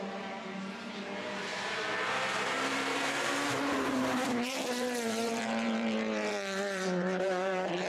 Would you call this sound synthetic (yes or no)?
yes